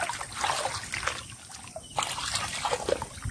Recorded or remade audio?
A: recorded